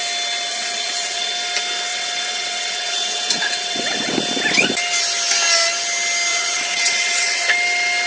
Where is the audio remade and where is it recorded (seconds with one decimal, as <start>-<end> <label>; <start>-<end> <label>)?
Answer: 0.0-0.5 recorded; 0.5-1.3 remade; 1.3-1.9 recorded; 1.9-4.1 remade; 4.1-6.3 recorded; 6.3-7.5 remade; 7.5-8.1 recorded